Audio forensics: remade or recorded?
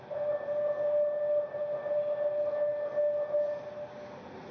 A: recorded